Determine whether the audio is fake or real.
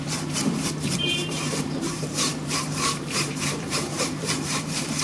fake